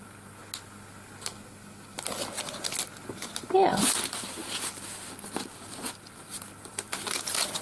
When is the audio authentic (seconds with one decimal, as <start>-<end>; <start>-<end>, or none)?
0.4-3.1; 4.4-6.7